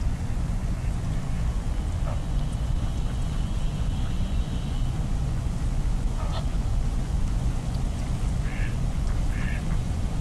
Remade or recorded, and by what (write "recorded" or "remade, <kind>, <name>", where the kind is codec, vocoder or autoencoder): remade, vocoder, Vocos